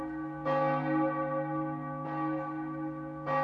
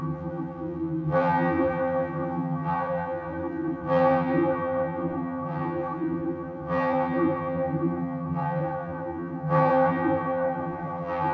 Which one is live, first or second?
first